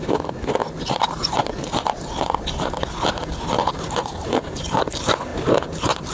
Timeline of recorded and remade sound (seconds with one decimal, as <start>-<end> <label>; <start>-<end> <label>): 0.0-6.1 recorded